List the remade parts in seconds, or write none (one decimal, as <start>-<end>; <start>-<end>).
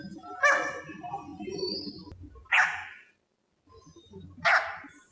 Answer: none